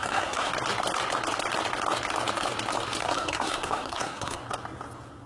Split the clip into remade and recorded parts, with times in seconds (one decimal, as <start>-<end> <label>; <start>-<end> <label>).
0.0-0.5 remade; 0.5-3.0 recorded; 3.0-4.4 remade; 4.4-5.3 recorded